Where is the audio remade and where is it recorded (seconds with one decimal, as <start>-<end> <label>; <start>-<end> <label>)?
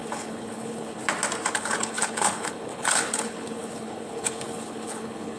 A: 0.0-1.0 remade; 1.0-1.5 recorded; 1.5-5.4 remade